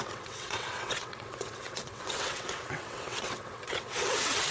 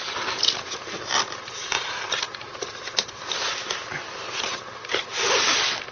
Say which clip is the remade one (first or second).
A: first